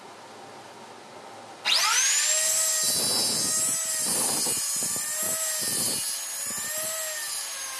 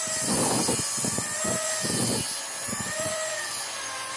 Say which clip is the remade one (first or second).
second